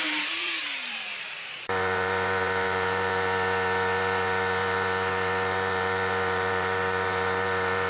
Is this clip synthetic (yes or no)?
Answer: yes